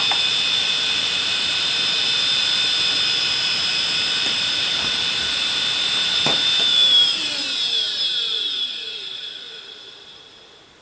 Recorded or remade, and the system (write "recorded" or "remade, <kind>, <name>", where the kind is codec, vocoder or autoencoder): remade, vocoder, BigVGAN v2